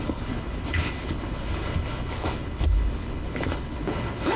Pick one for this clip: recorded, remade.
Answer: remade